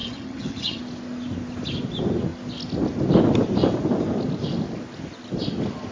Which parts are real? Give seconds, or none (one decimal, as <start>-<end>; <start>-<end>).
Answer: 0.8-5.9